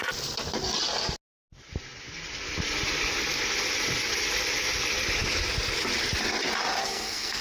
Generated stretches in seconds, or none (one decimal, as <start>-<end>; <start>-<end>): 6.8-7.4